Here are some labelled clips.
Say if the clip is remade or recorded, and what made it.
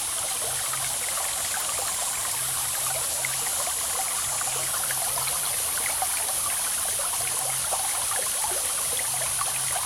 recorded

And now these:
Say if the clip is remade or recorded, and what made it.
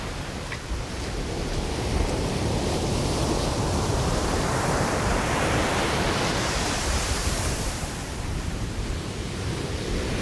remade, vocoder, BigVGAN v2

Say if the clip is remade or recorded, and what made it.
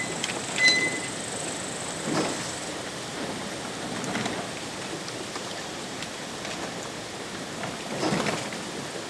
recorded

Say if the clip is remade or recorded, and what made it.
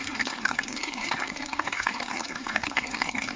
remade, codec, SNAC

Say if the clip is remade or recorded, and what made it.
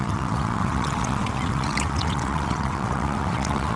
remade, vocoder, WaveNeXt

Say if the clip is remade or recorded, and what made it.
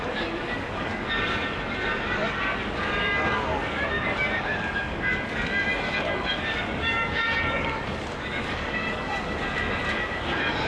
remade, codec, DAC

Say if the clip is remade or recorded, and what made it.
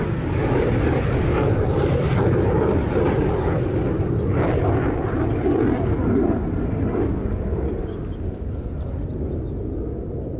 recorded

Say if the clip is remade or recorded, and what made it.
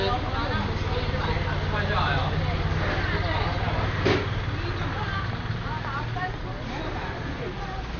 recorded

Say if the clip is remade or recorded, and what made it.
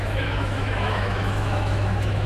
remade, autoencoder, DAC-VAE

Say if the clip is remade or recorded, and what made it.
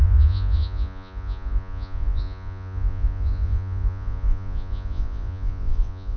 remade, vocoder, Vocos